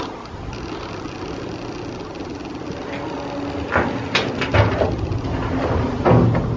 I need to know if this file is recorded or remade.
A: recorded